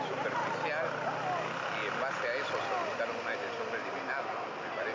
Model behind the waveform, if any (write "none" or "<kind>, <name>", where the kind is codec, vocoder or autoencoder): none